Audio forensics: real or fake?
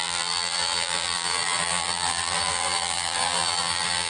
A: fake